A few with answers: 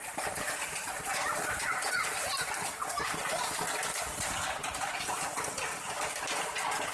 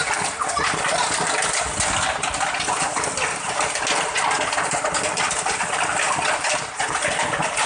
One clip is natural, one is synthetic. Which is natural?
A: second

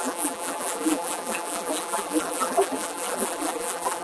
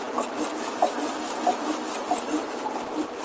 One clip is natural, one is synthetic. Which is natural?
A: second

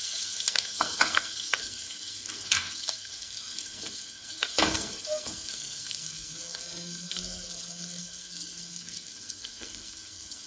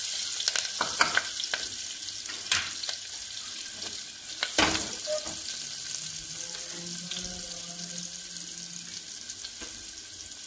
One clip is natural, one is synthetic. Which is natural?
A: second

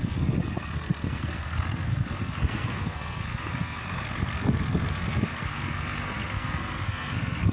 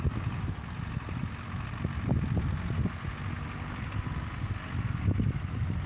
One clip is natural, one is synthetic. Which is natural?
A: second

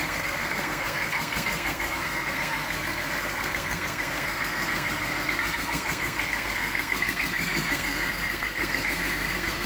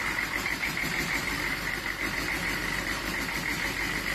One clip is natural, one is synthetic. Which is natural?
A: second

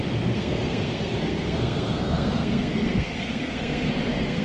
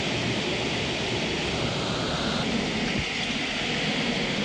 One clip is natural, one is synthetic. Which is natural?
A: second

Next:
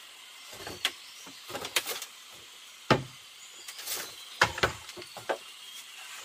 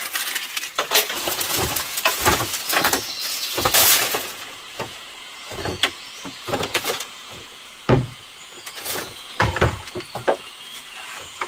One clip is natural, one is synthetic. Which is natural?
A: first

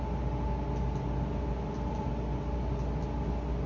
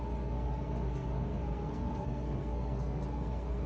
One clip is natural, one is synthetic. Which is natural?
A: first